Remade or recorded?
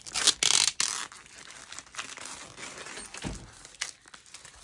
recorded